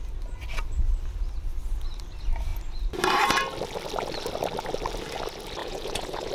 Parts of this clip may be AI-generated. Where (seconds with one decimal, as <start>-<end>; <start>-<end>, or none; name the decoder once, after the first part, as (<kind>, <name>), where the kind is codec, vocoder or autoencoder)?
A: 5.6-6.3 (vocoder, Vocos)